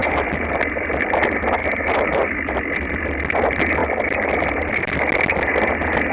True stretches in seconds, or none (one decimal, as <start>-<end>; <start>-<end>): 0.5-1.6; 2.9-3.8; 5.0-6.1